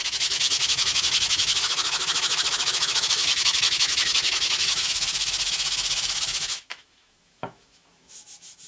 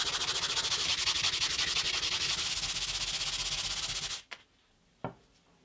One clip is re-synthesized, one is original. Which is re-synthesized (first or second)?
first